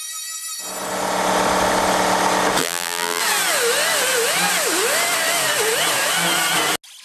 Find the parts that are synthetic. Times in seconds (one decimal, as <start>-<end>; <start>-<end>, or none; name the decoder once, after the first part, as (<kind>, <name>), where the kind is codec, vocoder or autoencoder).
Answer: 2.6-3.2 (vocoder, BigVGAN v2)